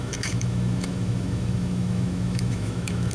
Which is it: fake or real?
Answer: fake